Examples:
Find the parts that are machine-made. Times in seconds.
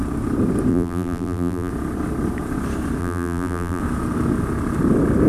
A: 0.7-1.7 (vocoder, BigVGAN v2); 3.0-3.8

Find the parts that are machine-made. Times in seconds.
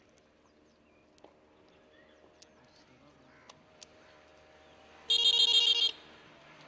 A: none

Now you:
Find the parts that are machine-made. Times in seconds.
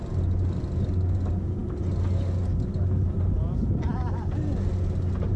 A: none